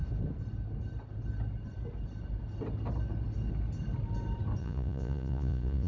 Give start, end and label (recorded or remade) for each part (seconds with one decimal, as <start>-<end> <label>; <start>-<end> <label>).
0.0-4.6 recorded; 4.6-5.9 remade